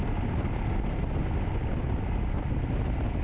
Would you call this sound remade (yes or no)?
no